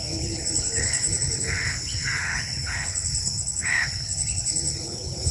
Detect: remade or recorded remade